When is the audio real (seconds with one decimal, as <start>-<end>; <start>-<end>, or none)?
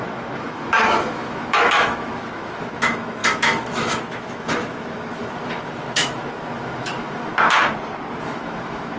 7.3-8.2